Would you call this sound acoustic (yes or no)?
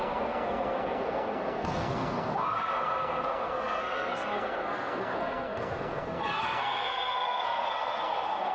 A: no